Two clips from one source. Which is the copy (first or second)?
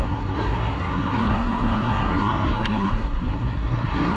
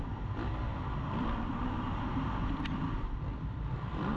first